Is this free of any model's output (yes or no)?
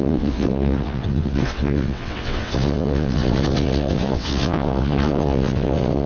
no